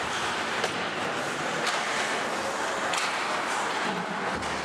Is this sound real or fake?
real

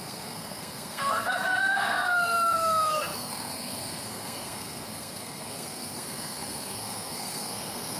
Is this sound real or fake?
fake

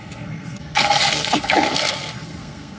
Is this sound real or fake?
fake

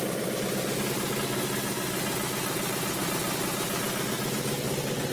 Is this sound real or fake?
real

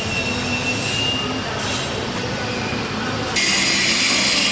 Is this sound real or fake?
real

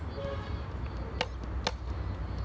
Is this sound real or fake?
real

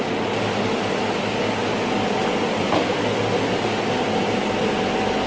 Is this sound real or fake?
real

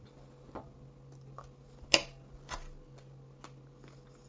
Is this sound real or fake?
real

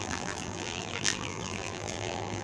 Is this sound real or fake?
fake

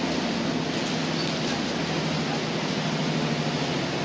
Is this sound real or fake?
real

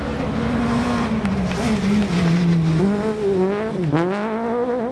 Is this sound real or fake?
real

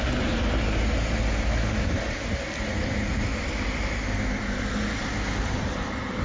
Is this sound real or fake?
real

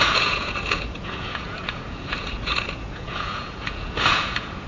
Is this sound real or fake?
fake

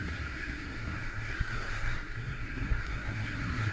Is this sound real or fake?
fake